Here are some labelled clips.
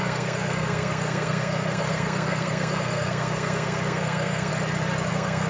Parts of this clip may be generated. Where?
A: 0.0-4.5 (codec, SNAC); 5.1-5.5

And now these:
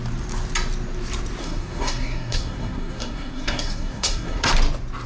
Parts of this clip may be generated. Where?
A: 1.4-4.5 (codec, SNAC)

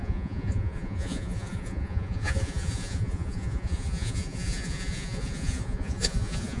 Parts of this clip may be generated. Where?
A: 0.0-6.6 (vocoder, Vocos)

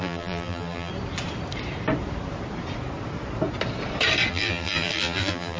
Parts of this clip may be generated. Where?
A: 0.0-0.9 (vocoder, BigVGAN v2); 4.3-5.6

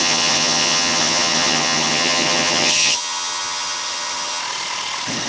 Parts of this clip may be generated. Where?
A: 0.0-4.4 (vocoder, HiFi-GAN)